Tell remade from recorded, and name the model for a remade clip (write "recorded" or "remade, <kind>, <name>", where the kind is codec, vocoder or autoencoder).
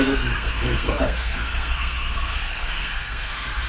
remade, codec, SNAC